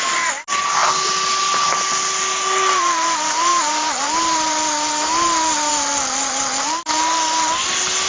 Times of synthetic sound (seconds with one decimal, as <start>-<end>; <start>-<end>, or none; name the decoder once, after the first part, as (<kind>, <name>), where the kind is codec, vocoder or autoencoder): none